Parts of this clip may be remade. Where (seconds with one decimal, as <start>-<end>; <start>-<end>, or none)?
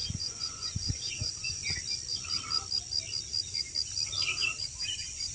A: 0.0-1.6; 4.8-5.3